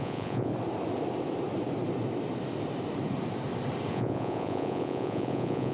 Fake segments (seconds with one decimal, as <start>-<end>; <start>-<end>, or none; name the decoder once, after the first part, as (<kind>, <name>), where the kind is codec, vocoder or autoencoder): 0.0-0.5 (vocoder, Vocos); 3.9-5.7

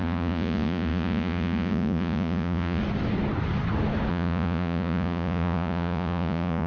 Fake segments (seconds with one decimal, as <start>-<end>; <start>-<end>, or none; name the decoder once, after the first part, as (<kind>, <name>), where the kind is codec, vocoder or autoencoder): 0.0-2.8 (vocoder, Vocos); 4.1-6.7

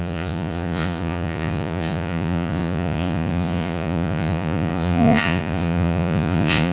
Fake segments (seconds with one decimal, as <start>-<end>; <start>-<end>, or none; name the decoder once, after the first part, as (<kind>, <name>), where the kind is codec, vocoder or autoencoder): 0.0-6.7 (vocoder, Vocos)

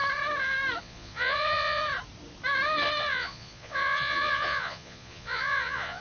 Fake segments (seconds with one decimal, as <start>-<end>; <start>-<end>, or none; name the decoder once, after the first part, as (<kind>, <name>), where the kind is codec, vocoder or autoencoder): 0.8-1.8 (vocoder, Vocos); 3.1-6.0

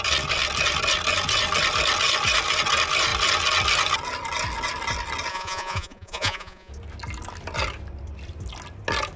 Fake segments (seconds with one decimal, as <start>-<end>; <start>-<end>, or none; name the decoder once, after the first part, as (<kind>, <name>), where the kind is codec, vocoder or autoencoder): 5.3-6.7 (vocoder, Vocos)

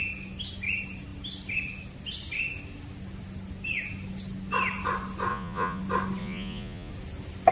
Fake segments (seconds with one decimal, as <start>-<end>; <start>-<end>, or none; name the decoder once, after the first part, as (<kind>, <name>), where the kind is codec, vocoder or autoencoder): 5.3-5.8 (vocoder, Vocos); 6.2-6.9